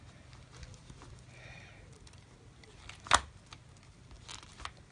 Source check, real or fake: real